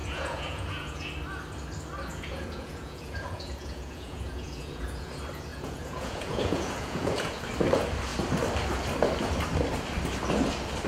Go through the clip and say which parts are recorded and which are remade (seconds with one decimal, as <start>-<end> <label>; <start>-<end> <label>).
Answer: 0.0-1.1 remade; 1.1-2.1 recorded; 2.1-5.1 remade; 5.1-5.5 recorded; 5.5-7.4 remade; 7.4-10.9 recorded